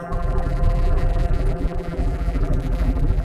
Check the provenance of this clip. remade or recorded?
remade